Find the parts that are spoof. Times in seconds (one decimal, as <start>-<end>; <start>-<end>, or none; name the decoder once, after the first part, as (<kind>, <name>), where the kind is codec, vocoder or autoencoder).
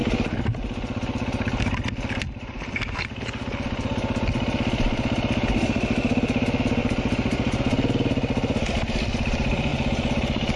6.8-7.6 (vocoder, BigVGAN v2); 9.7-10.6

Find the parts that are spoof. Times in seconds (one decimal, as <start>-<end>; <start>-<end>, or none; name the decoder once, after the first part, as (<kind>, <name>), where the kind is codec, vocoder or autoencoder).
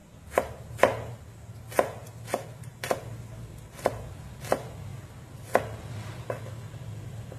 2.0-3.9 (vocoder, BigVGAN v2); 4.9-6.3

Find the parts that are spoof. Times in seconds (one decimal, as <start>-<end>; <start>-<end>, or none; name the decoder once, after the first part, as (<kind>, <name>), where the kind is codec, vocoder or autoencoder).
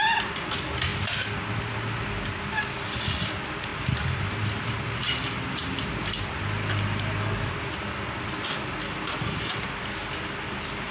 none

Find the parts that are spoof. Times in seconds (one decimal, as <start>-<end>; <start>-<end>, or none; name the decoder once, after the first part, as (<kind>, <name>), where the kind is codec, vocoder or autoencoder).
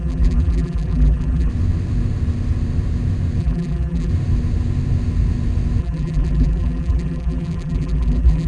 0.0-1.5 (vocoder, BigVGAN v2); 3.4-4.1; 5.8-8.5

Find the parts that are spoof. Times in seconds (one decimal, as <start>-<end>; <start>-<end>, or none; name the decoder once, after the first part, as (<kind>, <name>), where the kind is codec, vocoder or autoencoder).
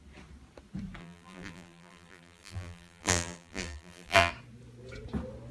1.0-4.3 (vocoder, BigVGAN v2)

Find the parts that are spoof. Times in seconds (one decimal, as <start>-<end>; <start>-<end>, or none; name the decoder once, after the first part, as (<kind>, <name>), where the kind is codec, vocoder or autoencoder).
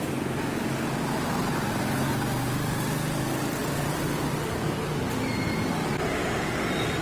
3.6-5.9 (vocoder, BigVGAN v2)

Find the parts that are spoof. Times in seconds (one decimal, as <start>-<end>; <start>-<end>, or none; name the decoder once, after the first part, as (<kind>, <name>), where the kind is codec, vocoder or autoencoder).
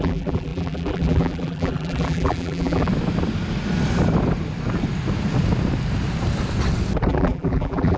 0.0-2.9 (vocoder, BigVGAN v2); 7.1-8.0